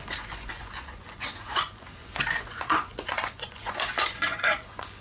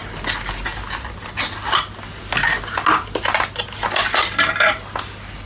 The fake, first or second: first